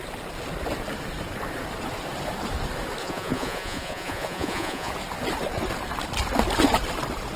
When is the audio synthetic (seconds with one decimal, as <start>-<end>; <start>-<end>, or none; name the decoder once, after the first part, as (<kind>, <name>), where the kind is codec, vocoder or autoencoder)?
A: 3.0-4.9 (vocoder, Vocos)